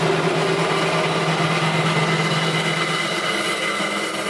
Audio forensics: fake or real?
real